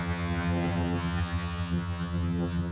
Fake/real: fake